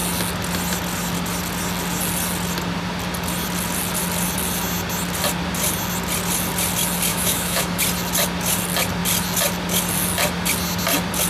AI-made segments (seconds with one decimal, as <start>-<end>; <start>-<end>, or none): 7.1-7.8